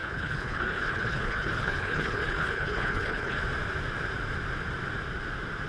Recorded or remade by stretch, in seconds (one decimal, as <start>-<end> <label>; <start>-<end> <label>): 0.0-3.4 remade; 3.4-5.7 recorded